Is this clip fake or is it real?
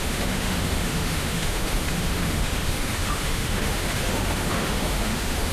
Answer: fake